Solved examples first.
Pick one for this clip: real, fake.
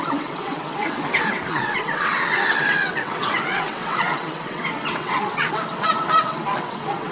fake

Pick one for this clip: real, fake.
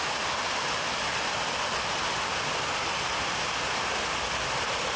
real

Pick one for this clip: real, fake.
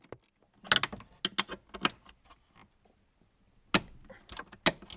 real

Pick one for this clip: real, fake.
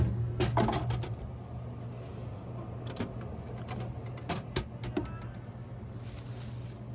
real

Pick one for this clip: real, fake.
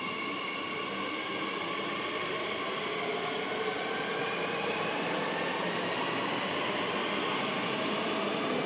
real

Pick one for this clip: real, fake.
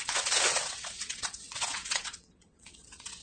fake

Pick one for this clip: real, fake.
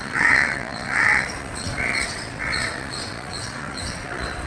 fake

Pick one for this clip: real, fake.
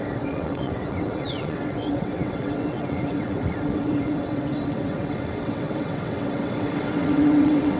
fake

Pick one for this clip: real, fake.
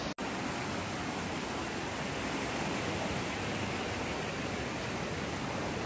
real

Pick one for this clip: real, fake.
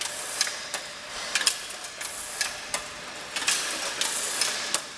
real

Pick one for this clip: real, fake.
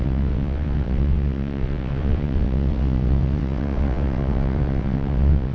fake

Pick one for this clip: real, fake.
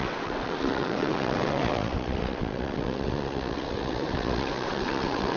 fake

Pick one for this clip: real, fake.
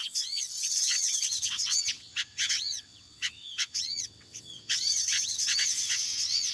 fake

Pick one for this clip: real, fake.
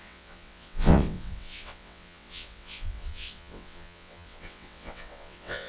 fake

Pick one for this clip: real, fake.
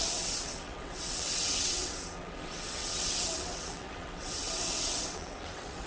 fake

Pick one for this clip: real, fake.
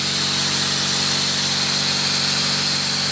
real